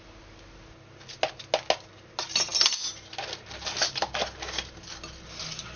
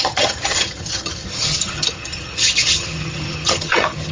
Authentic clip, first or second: first